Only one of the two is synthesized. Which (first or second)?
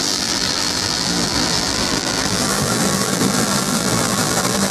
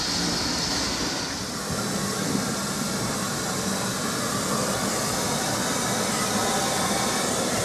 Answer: first